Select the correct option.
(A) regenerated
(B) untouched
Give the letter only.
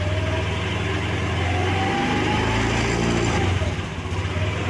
B